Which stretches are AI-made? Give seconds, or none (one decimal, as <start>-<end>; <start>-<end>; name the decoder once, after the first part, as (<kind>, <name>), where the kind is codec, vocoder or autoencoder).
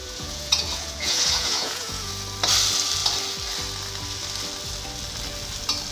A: 0.0-2.1 (vocoder, Vocos)